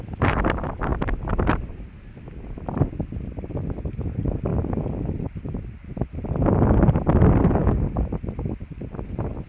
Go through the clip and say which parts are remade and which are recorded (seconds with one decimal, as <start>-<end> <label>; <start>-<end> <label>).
0.0-0.9 recorded; 0.9-1.7 remade; 1.7-9.5 recorded